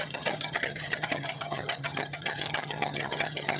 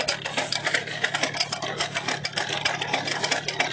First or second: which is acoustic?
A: second